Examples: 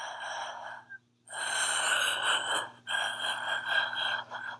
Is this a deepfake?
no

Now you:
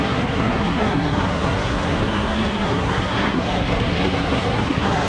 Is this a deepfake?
yes